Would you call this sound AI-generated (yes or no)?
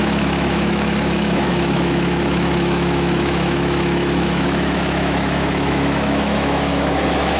yes